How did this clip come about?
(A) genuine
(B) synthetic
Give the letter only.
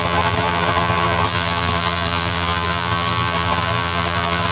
B